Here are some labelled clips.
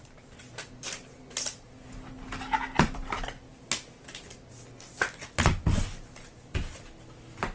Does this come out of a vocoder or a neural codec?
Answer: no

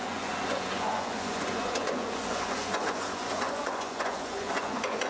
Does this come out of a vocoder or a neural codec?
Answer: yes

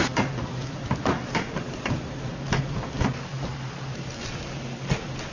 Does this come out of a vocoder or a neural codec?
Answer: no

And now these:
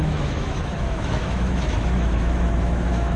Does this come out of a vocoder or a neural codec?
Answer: yes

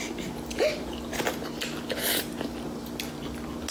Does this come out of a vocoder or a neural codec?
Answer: no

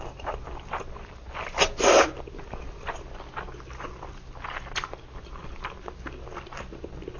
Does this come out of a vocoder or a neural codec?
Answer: no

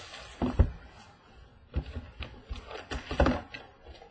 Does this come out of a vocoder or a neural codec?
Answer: no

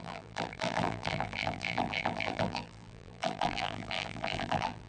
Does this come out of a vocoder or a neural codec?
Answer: yes